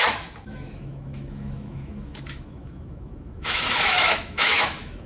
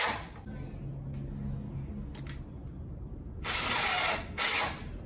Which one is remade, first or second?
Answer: first